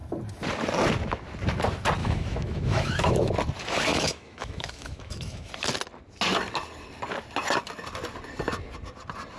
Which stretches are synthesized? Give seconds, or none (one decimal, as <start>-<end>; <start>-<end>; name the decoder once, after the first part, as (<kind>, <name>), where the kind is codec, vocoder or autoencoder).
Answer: 2.0-3.3 (autoencoder, DAC-VAE); 3.9-5.5